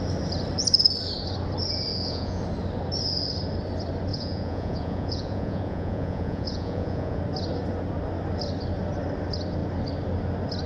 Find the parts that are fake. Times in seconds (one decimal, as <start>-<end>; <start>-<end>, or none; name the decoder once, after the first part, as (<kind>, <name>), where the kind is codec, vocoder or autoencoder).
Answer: 1.9-2.4 (vocoder, Vocos); 4.1-7.2